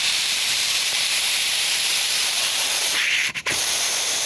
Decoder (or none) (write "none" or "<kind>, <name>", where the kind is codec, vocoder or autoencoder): vocoder, BigVGAN v2